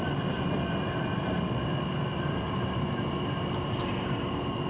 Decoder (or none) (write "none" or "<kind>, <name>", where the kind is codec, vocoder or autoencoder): none